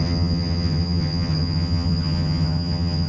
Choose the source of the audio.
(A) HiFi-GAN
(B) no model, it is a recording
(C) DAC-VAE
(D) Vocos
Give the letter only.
A